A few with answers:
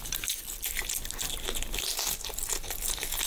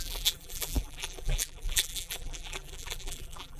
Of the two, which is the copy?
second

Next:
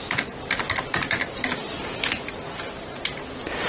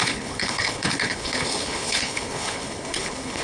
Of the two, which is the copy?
second